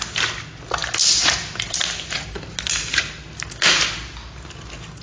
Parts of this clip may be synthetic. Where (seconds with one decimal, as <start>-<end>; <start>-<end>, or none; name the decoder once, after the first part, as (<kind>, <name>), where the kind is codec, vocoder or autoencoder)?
none